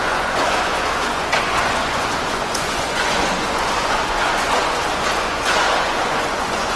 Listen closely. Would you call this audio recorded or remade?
remade